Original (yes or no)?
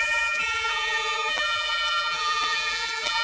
no